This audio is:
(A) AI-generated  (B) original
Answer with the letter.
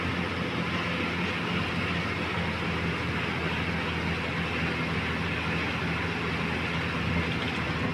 B